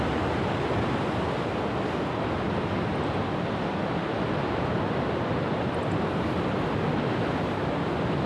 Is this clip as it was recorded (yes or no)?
yes